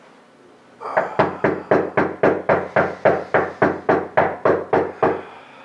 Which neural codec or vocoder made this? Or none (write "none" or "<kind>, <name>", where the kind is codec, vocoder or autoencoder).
none